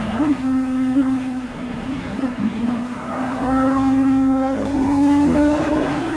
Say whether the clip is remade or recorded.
remade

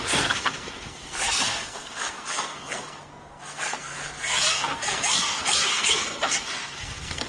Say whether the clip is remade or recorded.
remade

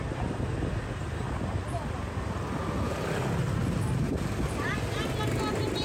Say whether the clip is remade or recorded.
recorded